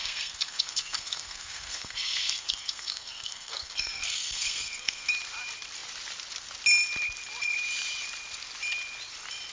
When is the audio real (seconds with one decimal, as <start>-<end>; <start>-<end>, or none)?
5.1-9.5